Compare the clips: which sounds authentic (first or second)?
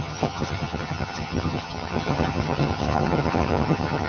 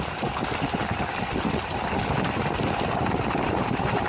second